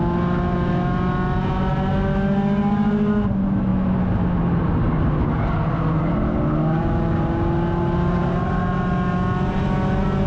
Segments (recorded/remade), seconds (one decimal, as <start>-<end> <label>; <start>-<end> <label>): 0.0-10.3 recorded